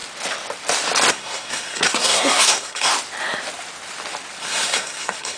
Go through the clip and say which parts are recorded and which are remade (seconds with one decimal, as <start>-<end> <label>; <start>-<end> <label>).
0.0-1.1 recorded; 1.1-2.9 remade; 2.9-4.4 recorded; 4.4-5.4 remade